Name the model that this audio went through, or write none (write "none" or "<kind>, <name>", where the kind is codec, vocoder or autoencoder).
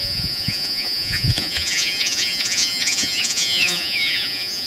vocoder, Vocos